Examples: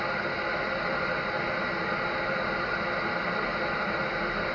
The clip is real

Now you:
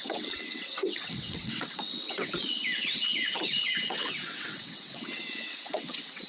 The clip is fake